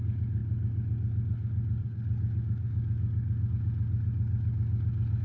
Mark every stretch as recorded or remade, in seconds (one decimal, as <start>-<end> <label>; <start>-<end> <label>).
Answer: 0.0-5.2 recorded